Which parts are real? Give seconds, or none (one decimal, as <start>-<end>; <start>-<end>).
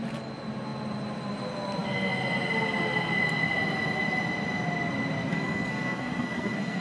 0.0-5.3